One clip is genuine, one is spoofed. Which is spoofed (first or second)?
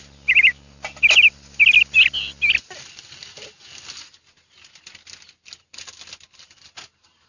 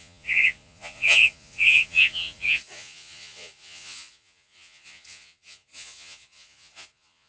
second